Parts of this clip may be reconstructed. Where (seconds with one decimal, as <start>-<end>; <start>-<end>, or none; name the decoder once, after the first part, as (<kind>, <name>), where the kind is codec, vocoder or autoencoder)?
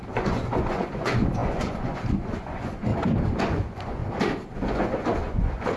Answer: 0.0-2.9 (vocoder, Vocos); 3.4-4.0; 4.5-5.8